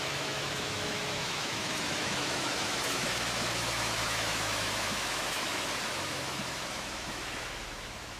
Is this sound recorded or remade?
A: remade